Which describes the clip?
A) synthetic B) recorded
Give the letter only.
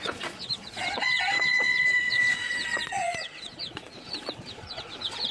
A